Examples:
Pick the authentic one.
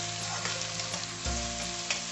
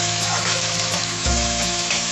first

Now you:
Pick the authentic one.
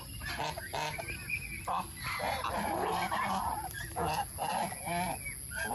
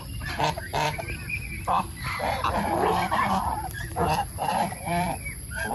first